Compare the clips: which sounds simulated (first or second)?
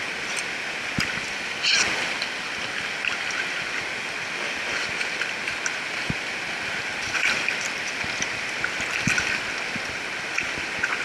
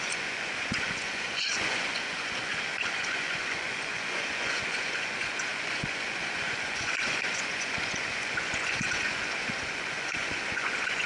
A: second